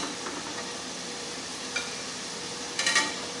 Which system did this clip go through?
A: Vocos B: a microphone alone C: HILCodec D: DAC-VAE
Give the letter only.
B